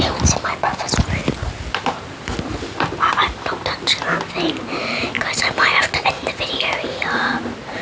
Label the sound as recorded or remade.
recorded